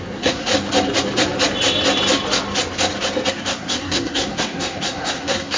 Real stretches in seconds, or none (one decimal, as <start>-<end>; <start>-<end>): 0.5-3.3

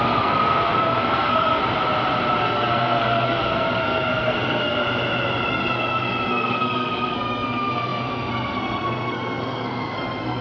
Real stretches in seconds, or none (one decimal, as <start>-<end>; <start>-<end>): 1.6-2.4; 4.8-5.5

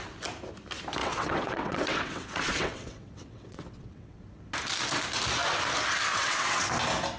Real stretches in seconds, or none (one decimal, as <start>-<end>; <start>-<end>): 0.0-1.0; 4.2-6.1; 6.7-7.2

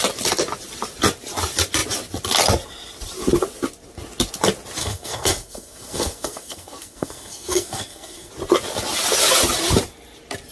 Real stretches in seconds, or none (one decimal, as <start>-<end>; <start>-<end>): 0.0-4.8; 8.3-10.5

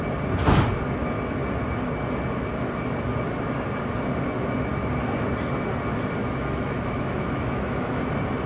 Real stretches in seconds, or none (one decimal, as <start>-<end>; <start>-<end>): 0.0-6.2; 8.0-8.5